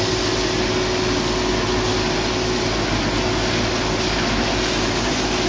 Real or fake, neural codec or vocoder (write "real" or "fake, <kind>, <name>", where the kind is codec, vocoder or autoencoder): real